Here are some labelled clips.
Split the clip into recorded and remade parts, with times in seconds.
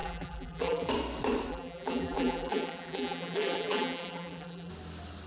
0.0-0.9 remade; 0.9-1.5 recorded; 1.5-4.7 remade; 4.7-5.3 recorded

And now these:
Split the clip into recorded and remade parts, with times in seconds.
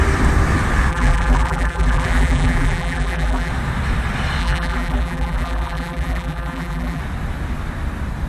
0.0-0.9 recorded; 0.9-3.5 remade; 3.5-4.4 recorded; 4.4-7.0 remade; 7.0-8.3 recorded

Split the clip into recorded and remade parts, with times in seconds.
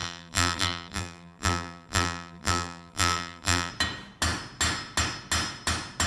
0.0-3.7 remade; 3.7-6.1 recorded